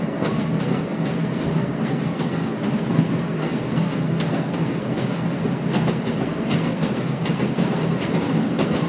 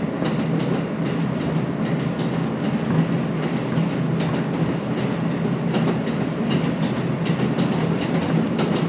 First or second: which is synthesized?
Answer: first